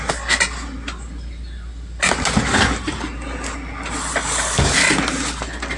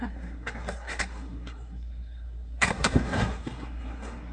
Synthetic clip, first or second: second